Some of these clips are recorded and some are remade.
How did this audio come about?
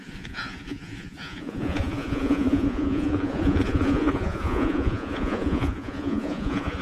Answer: remade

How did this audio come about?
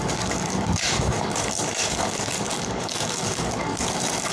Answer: remade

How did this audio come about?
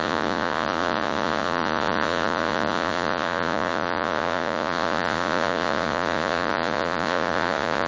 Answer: remade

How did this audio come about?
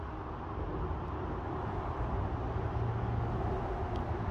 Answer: recorded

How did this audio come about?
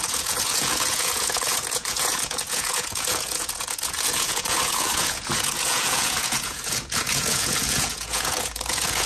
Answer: remade